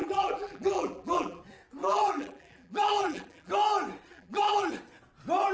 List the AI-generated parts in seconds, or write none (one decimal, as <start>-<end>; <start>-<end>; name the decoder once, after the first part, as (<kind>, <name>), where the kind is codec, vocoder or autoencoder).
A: 0.0-1.4 (vocoder, BigVGAN v2); 1.8-3.5; 4.1-4.7

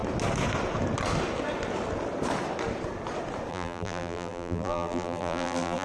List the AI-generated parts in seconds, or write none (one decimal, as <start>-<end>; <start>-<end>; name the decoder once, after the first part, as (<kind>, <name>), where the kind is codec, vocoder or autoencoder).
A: 3.5-5.8 (vocoder, BigVGAN v2)

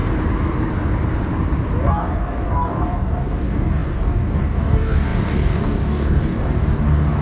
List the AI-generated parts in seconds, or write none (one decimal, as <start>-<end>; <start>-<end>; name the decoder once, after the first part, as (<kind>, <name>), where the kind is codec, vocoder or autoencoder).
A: 1.8-7.2 (codec, DAC)

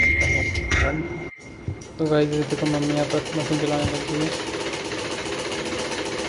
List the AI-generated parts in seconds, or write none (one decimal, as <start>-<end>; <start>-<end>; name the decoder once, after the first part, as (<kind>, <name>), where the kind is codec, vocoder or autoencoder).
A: 0.0-2.0 (codec, HILCodec)

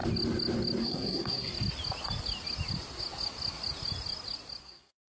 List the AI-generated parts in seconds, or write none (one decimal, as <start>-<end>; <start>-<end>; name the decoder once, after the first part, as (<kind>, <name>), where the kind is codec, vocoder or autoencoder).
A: 0.8-1.5 (codec, SNAC); 4.6-5.1

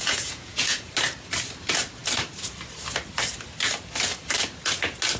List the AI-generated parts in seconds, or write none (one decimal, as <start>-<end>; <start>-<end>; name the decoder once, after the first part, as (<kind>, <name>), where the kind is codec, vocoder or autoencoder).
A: 0.0-0.9 (vocoder, Vocos)

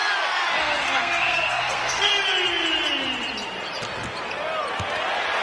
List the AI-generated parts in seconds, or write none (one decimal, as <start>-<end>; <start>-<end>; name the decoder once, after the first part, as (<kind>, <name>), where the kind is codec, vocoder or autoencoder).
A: 0.6-2.1 (codec, SNAC)

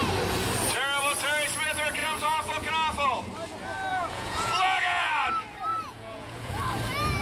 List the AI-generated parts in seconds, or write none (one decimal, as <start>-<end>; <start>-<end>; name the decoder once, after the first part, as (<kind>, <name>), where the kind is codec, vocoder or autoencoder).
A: 2.0-2.7 (vocoder, Vocos); 3.9-5.1; 5.7-6.6